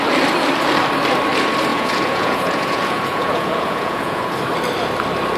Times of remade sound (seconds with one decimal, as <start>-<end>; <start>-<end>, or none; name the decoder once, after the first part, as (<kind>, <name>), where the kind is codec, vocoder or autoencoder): 1.7-4.3 (vocoder, Vocos)